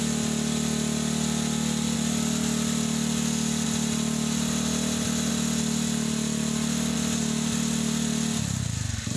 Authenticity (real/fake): real